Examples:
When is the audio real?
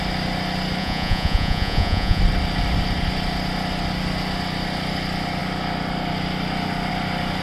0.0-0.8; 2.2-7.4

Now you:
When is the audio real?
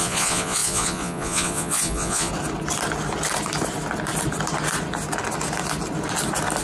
2.3-6.6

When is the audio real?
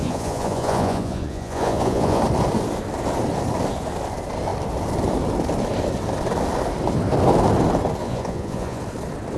2.2-8.0; 8.8-9.4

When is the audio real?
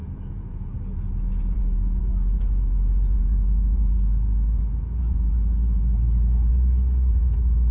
6.5-7.1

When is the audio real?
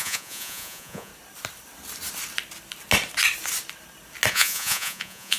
1.1-4.3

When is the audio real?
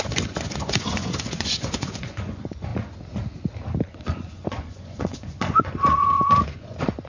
2.7-3.9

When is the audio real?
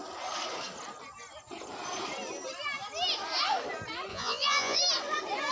0.0-4.1; 4.8-5.5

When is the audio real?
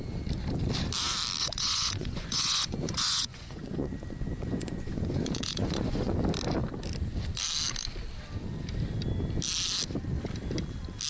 0.0-1.4; 6.2-11.1